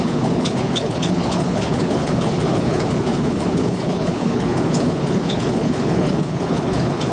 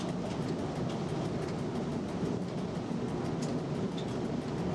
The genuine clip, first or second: second